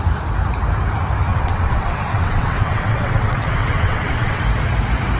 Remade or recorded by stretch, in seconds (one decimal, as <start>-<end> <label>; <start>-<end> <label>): 0.0-1.3 recorded; 1.3-4.4 remade; 4.4-5.2 recorded